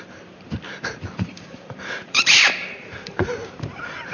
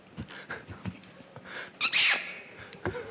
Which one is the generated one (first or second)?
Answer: first